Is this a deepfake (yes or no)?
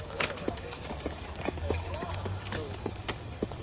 yes